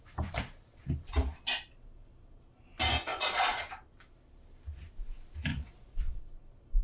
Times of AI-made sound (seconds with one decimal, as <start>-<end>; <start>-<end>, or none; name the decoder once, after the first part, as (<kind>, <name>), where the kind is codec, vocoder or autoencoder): 3.1-3.7 (vocoder, Vocos); 5.5-6.2